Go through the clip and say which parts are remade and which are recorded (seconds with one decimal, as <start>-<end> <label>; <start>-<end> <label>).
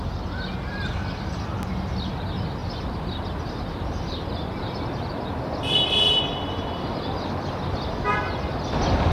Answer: 0.0-2.6 recorded; 2.6-5.4 remade; 5.4-9.1 recorded